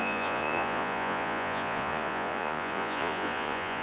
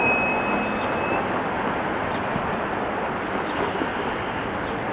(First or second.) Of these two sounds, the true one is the second